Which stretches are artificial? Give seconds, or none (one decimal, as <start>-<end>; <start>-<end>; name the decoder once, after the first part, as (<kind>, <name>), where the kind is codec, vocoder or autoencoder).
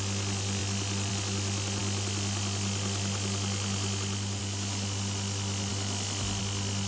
none